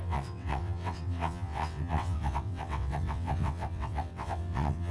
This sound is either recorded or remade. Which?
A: remade